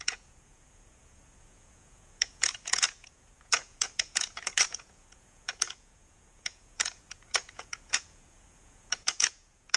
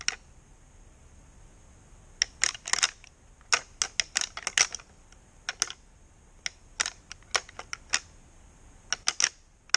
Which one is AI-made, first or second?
first